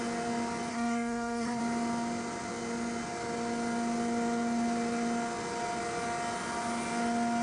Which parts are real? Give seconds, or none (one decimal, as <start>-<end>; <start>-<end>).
0.0-0.7; 1.6-7.4